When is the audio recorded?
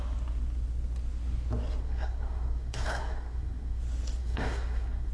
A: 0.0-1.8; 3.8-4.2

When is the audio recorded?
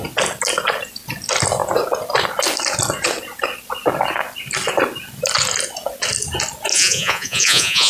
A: 0.0-6.7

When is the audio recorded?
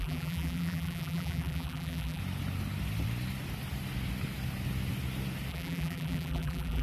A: 2.2-5.5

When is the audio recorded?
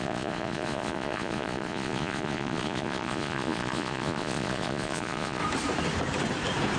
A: 5.4-6.8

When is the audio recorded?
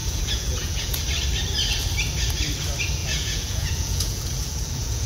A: 1.0-3.0